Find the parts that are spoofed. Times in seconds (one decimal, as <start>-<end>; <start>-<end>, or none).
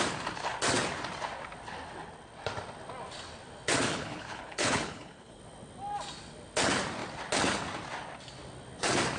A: 3.9-5.4